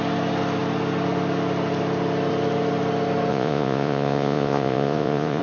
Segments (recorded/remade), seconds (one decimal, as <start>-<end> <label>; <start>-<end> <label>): 0.0-3.3 recorded; 3.3-5.4 remade

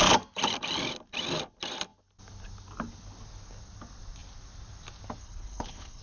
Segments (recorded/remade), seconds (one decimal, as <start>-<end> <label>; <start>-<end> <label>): 0.0-5.2 recorded; 5.2-6.0 remade